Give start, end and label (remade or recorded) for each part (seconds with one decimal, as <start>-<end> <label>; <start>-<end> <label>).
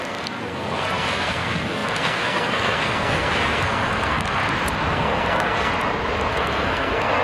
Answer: 0.0-4.4 remade; 4.4-4.9 recorded; 4.9-5.7 remade; 5.7-6.3 recorded; 6.3-7.2 remade